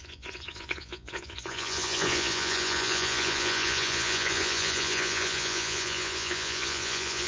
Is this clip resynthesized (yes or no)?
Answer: yes